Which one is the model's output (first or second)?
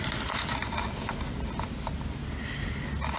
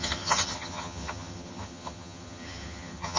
second